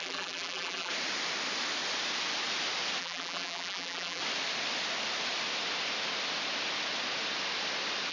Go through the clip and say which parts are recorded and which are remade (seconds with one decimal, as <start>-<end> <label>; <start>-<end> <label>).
0.0-0.9 remade; 0.9-3.0 recorded; 3.0-4.2 remade; 4.2-8.1 recorded